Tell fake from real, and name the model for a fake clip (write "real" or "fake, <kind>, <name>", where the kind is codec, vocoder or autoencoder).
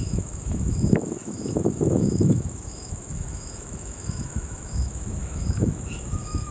fake, autoencoder, DAC-VAE